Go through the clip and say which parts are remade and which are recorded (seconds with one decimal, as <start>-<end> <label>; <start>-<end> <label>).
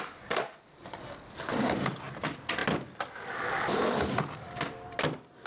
0.0-5.5 recorded